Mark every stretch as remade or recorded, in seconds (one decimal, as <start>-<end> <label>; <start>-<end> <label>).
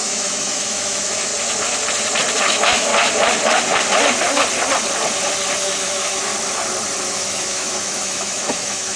0.0-1.3 remade; 1.3-2.4 recorded; 2.4-2.9 remade; 2.9-5.6 recorded; 5.6-6.3 remade; 6.3-7.0 recorded; 7.0-9.0 remade